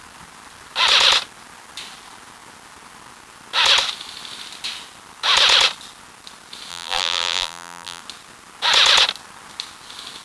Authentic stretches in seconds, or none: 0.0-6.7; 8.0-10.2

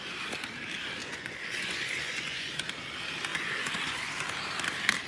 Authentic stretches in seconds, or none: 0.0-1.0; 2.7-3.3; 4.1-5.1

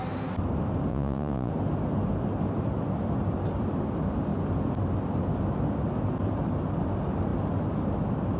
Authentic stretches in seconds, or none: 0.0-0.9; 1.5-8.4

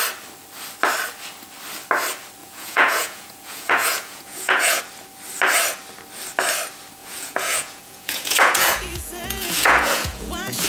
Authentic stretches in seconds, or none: 0.0-2.4; 4.8-7.0

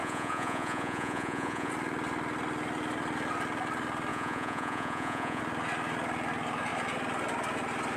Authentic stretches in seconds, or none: 1.7-4.1; 5.4-8.0

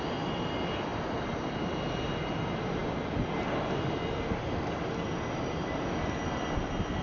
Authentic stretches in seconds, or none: 0.0-7.0

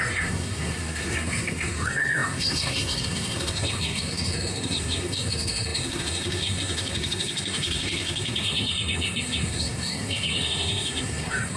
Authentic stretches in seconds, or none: none